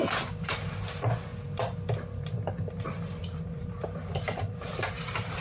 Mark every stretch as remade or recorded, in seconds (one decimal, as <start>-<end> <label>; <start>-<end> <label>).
0.0-3.2 recorded; 3.2-5.4 remade